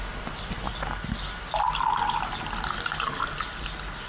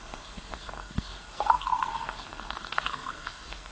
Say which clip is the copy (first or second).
second